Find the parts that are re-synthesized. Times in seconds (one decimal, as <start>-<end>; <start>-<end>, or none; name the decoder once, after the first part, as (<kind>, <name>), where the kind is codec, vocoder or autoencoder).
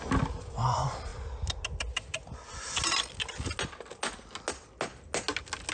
none